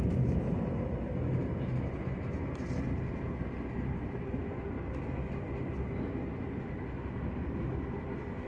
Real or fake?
real